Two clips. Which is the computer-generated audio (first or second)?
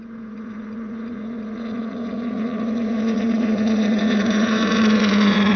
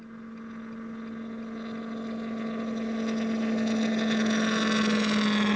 first